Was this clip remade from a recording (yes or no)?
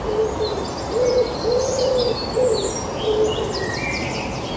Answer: no